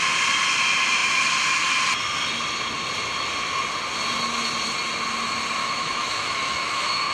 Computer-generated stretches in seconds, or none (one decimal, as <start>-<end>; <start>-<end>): 5.6-7.1